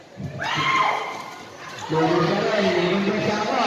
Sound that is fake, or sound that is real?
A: real